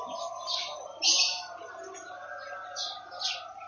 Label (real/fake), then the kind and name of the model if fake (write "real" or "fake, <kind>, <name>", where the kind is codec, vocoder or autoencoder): real